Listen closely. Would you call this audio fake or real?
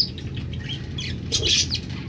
real